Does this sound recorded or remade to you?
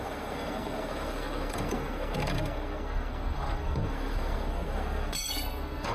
remade